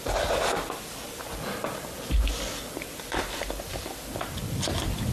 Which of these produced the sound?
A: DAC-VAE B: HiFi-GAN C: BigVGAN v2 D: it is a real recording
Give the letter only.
C